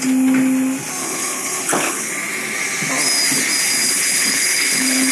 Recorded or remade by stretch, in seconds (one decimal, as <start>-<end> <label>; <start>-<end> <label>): 0.0-1.0 recorded; 1.0-2.1 remade; 2.1-3.8 recorded; 3.8-5.1 remade